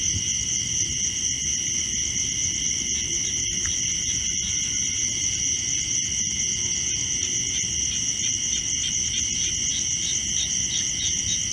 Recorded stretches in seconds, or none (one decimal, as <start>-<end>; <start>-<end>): 0.0-1.4; 4.3-11.5